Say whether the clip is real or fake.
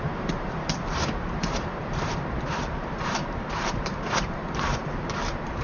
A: fake